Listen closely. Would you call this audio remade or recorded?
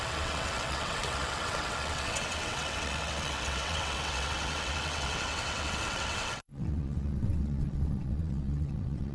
remade